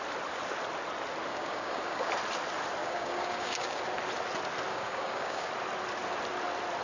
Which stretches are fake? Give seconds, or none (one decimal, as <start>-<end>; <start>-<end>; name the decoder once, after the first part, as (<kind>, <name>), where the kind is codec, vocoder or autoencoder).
1.3-2.1 (codec, DAC); 2.8-3.8; 4.7-5.5